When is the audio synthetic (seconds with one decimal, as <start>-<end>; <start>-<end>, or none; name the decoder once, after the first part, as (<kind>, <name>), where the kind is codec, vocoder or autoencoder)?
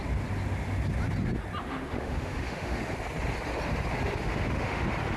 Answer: 1.6-2.8 (autoencoder, DAC-VAE); 4.2-4.8